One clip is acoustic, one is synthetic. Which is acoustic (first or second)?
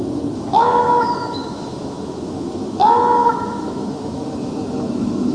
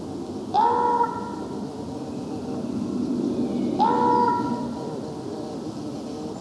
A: second